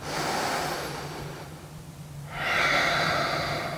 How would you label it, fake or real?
real